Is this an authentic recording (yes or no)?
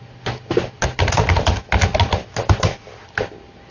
yes